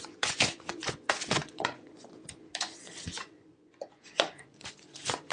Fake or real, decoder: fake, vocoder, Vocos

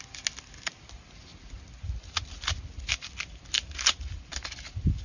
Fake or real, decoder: real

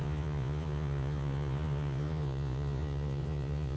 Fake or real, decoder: fake, vocoder, Vocos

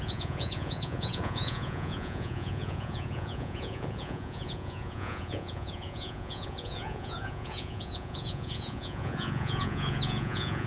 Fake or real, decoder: fake, vocoder, Vocos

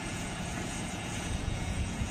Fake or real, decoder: fake, vocoder, Vocos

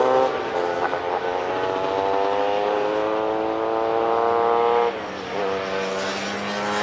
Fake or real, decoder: real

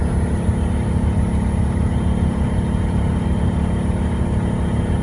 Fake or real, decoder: real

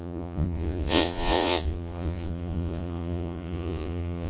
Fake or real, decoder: fake, vocoder, Vocos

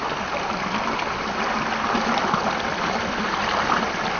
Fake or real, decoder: real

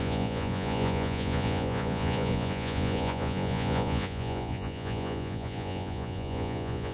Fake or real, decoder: fake, vocoder, Vocos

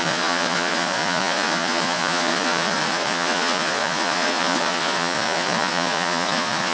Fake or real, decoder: fake, vocoder, Vocos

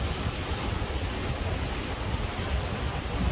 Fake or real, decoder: real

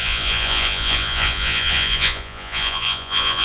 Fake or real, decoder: fake, vocoder, Vocos